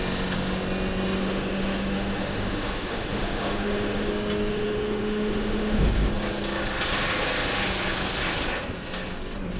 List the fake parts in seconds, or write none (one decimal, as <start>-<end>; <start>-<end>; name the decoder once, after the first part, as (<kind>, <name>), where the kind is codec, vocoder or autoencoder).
1.2-4.1 (autoencoder, DAC-VAE); 4.5-6.1